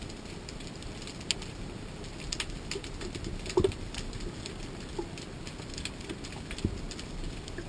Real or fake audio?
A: real